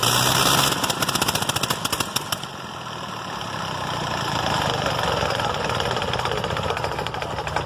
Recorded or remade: recorded